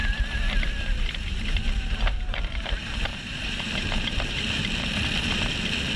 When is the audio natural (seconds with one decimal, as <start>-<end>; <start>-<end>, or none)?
2.7-3.1; 4.4-6.0